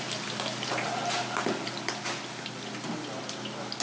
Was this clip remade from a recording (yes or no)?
no